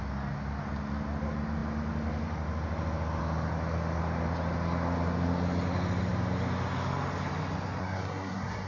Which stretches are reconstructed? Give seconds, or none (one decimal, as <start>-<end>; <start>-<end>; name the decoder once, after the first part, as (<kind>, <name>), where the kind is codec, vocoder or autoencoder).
7.8-8.7 (codec, SNAC)